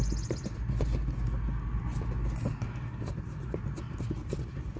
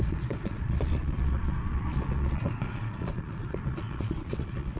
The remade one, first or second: second